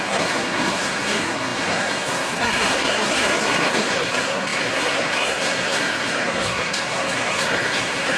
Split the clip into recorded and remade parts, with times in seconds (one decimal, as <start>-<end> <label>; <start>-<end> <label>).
0.0-8.2 remade